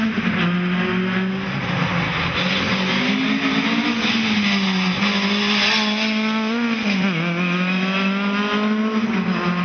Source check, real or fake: real